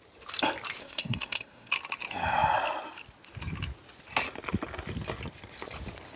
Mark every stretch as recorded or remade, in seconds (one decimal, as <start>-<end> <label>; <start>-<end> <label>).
0.0-0.8 recorded; 0.8-1.7 remade; 1.7-6.2 recorded